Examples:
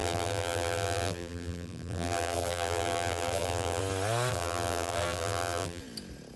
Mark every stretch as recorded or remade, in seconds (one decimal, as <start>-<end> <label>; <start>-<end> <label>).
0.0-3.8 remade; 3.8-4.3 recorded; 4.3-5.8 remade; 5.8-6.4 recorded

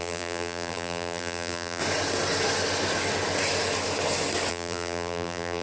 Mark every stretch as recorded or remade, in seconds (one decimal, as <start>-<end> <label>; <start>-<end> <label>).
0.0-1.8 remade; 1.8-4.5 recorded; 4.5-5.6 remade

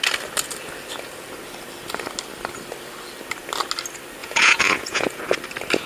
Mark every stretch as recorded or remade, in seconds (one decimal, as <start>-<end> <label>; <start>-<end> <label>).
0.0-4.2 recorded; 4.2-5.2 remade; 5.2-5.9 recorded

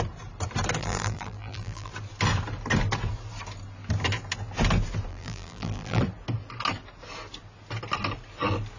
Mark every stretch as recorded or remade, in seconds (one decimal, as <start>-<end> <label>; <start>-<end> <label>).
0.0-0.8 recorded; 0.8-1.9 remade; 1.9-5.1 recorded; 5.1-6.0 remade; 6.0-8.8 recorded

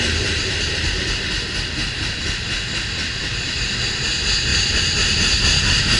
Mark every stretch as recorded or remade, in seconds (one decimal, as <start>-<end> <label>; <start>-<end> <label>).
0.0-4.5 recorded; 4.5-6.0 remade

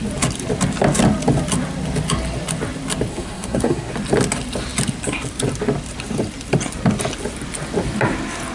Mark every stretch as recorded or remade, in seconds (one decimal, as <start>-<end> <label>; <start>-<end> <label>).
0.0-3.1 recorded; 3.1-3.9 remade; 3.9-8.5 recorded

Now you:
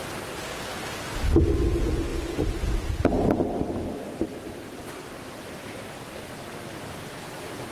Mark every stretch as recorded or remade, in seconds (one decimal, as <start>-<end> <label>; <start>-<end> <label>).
0.0-7.7 recorded

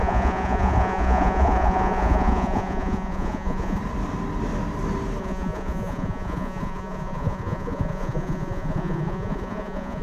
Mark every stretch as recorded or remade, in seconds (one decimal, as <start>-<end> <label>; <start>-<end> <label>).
0.0-3.8 remade; 3.8-5.2 recorded; 5.2-10.0 remade